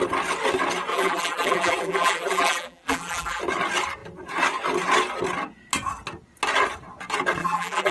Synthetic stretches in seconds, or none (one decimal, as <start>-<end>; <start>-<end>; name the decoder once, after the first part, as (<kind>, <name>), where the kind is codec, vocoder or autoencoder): 0.9-3.4 (vocoder, BigVGAN v2); 7.4-7.9